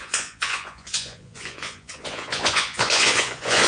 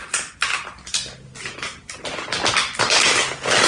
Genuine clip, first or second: second